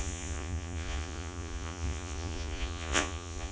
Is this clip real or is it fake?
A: fake